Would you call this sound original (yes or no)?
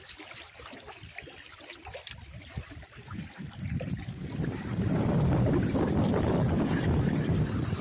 no